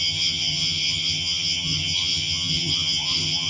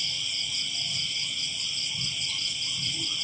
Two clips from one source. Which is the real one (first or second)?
second